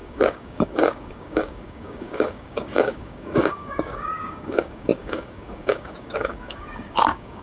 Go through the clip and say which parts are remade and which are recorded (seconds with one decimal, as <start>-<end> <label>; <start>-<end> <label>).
0.0-7.4 remade